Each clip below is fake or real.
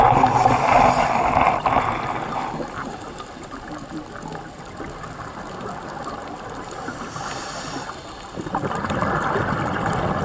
real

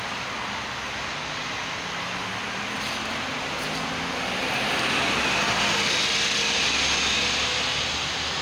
real